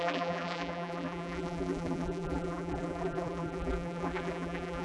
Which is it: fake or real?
fake